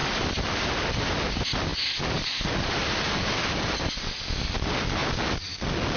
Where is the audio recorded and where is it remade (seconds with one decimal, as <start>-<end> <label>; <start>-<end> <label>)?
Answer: 0.0-1.1 remade; 1.1-1.7 recorded; 1.7-3.9 remade; 3.9-5.0 recorded; 5.0-5.5 remade; 5.5-6.0 recorded

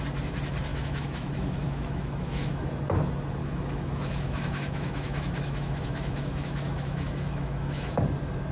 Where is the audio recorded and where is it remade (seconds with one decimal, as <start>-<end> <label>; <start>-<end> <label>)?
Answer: 0.0-0.7 recorded; 0.7-2.7 remade; 2.7-3.4 recorded; 3.4-8.0 remade; 8.0-8.5 recorded